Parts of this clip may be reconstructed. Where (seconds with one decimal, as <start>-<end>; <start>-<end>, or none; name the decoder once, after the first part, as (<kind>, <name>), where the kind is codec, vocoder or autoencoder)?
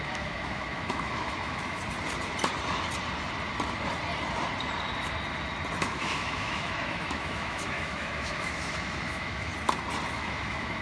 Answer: 0.0-1.8 (autoencoder, DAC-VAE); 5.8-9.5; 10.1-10.8